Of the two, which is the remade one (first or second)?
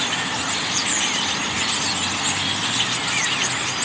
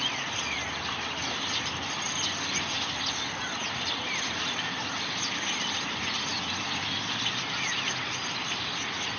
second